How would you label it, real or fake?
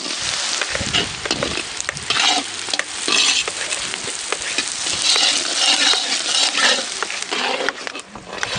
real